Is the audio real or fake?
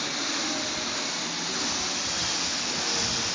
real